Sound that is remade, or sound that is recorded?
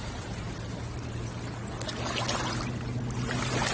recorded